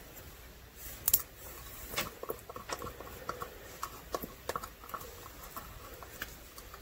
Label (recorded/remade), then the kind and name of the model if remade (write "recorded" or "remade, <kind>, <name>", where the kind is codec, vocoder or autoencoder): recorded